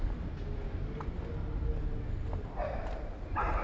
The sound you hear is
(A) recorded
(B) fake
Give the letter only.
A